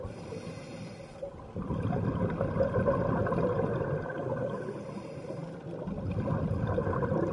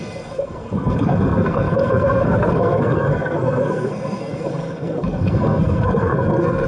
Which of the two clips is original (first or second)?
first